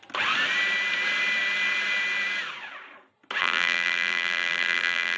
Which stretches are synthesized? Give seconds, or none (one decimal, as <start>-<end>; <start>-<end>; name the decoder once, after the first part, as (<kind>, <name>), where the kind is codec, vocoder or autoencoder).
3.4-5.2 (vocoder, BigVGAN v2)

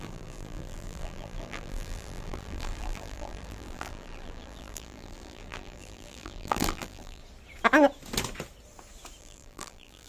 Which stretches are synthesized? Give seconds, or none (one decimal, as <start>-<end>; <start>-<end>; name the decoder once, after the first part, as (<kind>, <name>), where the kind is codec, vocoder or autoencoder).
0.0-7.2 (vocoder, BigVGAN v2); 9.2-10.1

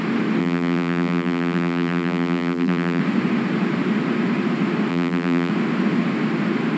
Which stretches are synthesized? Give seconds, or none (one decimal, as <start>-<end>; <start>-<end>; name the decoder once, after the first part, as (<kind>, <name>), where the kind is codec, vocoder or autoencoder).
0.4-3.0 (vocoder, BigVGAN v2); 4.9-5.5

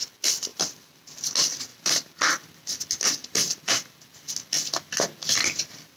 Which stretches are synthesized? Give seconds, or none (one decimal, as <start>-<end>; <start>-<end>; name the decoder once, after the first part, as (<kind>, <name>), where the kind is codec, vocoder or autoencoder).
0.5-1.2 (vocoder, BigVGAN v2); 1.7-2.3; 3.2-3.9

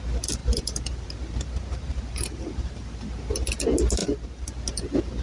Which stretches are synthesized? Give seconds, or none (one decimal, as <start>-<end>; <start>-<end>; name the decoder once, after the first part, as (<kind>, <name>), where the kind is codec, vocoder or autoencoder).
0.4-3.5 (vocoder, BigVGAN v2); 4.0-4.5

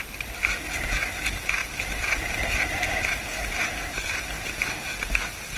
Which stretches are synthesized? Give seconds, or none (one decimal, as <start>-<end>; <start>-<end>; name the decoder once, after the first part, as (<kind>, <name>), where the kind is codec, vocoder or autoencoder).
1.6-2.6 (vocoder, BigVGAN v2); 3.6-4.2